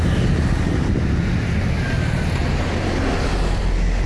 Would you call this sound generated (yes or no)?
no